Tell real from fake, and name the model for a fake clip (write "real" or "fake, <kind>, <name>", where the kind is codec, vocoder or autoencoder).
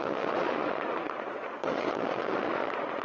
fake, vocoder, Vocos